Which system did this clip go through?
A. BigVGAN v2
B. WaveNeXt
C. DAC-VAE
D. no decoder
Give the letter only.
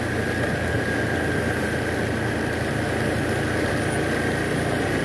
D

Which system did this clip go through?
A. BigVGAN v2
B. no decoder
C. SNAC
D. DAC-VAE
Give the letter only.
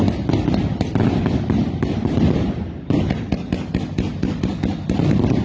B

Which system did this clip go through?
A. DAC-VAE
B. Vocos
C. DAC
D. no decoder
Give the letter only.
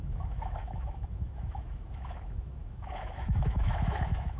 A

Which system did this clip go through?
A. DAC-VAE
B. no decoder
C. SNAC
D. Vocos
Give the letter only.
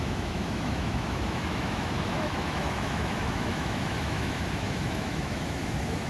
A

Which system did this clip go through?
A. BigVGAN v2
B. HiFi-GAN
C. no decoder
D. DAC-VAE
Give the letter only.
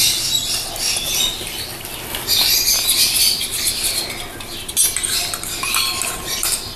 C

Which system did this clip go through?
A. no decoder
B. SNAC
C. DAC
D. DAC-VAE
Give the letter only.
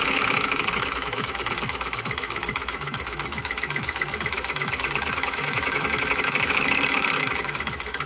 D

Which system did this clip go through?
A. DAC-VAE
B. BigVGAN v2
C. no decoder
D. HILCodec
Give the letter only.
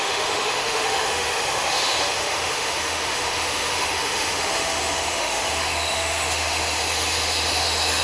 A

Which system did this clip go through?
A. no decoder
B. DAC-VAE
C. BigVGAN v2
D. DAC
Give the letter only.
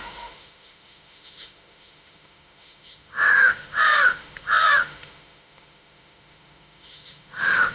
B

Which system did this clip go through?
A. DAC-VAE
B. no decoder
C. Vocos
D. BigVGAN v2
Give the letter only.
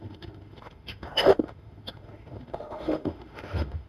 A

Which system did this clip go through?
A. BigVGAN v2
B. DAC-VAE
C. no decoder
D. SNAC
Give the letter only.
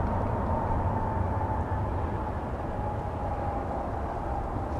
C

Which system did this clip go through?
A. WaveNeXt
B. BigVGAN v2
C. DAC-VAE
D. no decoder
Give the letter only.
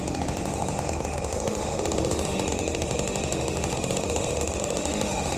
C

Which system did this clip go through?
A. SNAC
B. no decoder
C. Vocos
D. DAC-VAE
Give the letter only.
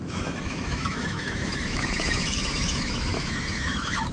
D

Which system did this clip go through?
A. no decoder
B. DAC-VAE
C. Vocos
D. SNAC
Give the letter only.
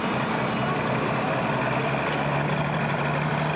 A